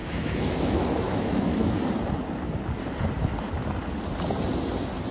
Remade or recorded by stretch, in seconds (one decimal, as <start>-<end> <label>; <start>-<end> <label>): 0.0-1.8 remade; 1.8-5.1 recorded